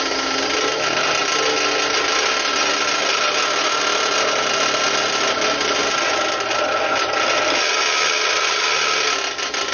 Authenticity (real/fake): real